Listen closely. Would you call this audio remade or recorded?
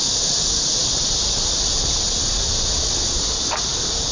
recorded